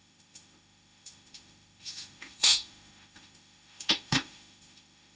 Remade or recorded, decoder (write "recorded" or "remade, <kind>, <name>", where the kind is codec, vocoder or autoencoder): remade, autoencoder, DAC-VAE